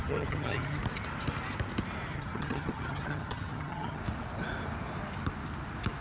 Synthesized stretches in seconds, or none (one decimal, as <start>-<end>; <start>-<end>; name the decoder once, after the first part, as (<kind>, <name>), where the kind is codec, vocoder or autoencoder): 0.0-0.8 (vocoder, HiFi-GAN); 2.1-4.0